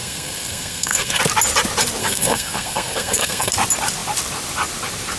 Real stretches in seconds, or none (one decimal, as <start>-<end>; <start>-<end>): 1.2-2.0; 3.5-5.2